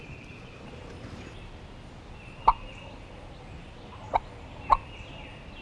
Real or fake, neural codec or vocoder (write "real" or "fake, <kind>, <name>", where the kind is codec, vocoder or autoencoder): real